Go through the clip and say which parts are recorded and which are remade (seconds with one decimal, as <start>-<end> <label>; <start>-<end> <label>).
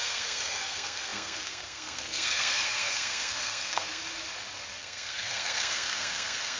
0.0-4.0 remade; 4.0-4.8 recorded; 4.8-6.6 remade